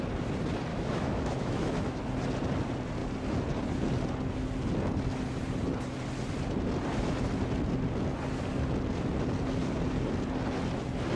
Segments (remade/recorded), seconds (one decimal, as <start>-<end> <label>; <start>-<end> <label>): 0.0-0.7 recorded; 0.7-2.0 remade; 2.0-11.2 recorded